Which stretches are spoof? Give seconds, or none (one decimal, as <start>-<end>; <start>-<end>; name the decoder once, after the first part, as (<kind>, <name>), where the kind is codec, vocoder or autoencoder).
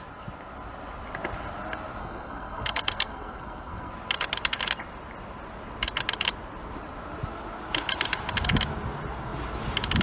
2.0-3.9 (codec, SNAC)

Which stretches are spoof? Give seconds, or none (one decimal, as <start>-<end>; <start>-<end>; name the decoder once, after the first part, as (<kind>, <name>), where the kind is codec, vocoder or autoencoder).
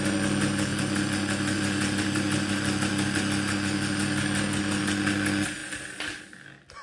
none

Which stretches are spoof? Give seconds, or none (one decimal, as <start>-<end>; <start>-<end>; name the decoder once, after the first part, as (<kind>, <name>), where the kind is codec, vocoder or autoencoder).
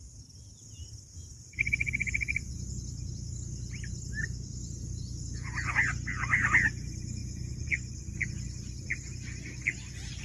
1.3-2.7 (vocoder, Vocos); 7.2-8.1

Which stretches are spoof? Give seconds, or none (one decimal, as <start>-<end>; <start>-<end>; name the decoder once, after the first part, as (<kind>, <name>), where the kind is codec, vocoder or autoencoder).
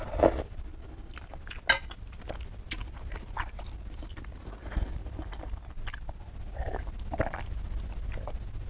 none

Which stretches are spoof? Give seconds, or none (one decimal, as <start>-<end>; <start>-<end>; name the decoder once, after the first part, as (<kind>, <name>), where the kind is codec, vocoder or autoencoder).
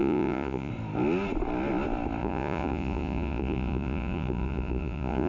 0.0-0.7 (vocoder, Vocos); 2.2-5.3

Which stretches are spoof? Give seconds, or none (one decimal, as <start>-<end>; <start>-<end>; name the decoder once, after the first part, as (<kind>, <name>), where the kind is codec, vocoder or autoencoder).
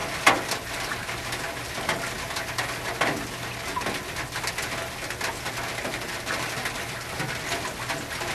none